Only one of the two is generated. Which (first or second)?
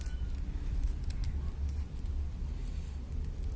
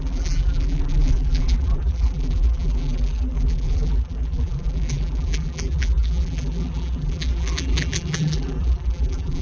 second